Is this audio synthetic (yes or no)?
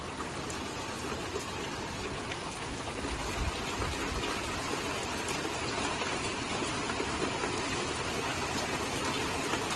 no